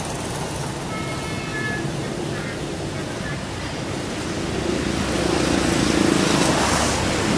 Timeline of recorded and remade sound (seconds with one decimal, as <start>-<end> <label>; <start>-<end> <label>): 0.0-7.4 recorded